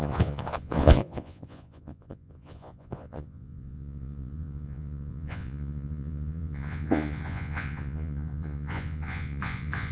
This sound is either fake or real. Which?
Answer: fake